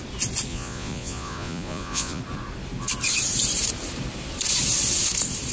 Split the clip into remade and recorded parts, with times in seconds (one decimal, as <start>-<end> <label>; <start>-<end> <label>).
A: 0.0-0.5 recorded; 0.5-2.2 remade; 2.2-5.5 recorded